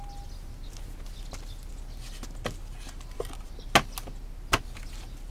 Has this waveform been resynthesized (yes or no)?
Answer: no